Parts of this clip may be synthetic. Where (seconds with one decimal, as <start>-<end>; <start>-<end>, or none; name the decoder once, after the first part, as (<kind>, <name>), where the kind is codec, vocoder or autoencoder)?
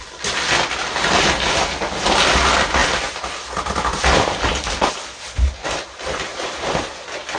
none